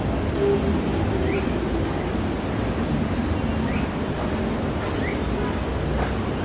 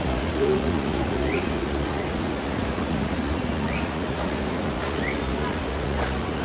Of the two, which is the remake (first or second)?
second